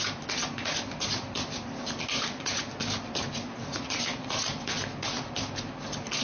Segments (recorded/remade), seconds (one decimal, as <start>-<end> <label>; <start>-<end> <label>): 0.0-6.2 recorded